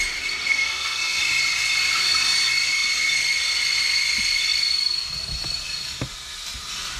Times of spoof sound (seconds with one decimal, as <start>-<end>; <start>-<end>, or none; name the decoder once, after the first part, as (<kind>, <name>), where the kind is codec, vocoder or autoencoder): 0.5-1.2 (codec, SNAC)